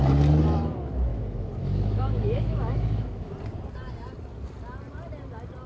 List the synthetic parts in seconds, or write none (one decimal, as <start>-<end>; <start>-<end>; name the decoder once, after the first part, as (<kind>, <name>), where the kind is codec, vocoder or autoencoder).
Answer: 1.1-3.3 (autoencoder, DAC-VAE)